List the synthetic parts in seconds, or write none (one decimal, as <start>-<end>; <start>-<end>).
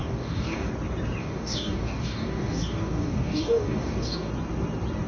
0.0-0.7; 1.2-4.3